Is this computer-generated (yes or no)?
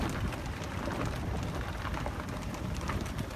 yes